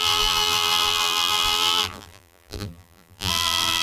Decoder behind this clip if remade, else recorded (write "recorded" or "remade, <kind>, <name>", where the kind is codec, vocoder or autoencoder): remade, vocoder, BigVGAN v2